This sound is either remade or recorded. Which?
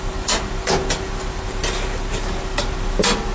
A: remade